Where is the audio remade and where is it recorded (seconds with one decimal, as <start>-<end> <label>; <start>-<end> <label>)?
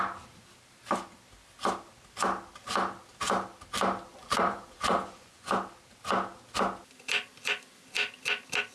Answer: 0.0-4.1 recorded; 4.1-5.5 remade; 5.5-8.7 recorded